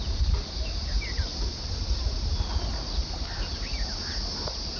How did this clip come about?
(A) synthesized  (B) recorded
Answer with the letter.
B